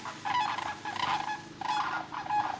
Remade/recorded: recorded